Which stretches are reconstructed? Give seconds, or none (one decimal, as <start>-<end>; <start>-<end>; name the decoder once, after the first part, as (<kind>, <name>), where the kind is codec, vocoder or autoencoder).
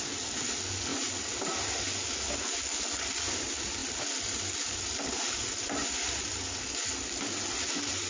none